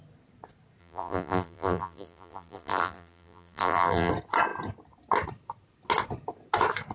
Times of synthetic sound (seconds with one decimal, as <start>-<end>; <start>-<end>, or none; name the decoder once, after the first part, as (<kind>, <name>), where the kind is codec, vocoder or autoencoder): 0.8-4.1 (vocoder, BigVGAN v2)